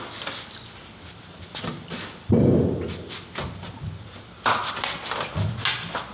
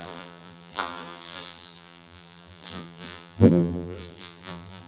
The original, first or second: first